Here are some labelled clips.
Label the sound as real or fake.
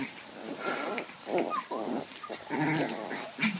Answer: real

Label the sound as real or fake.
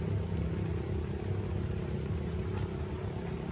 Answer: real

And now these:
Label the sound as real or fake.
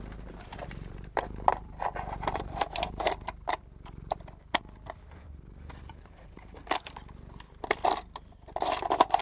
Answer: fake